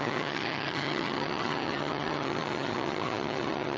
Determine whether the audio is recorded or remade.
remade